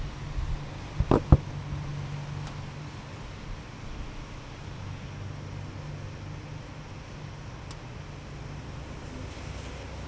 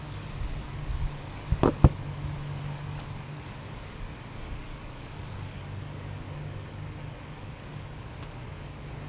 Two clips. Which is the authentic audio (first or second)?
first